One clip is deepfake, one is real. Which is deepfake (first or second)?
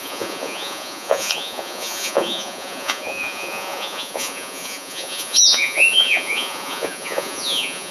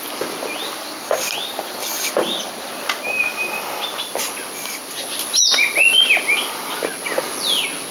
first